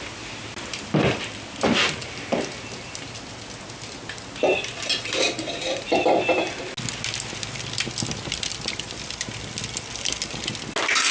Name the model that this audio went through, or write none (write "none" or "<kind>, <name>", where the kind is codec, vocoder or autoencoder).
none